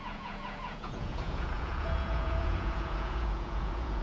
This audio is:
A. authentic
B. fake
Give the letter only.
B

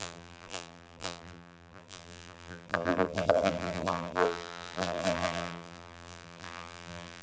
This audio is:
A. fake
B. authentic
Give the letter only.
A